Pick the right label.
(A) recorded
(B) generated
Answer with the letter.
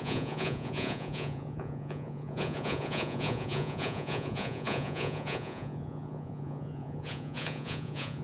B